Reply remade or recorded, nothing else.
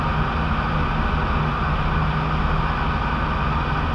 recorded